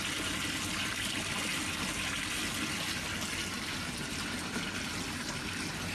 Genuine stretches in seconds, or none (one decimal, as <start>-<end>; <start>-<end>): 0.0-5.9